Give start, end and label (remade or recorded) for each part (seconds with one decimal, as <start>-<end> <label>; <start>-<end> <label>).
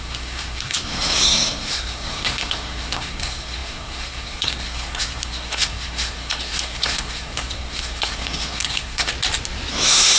0.0-9.1 remade; 9.1-9.7 recorded; 9.7-10.2 remade